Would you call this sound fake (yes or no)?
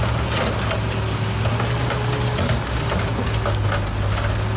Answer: no